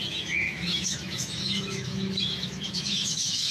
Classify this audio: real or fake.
fake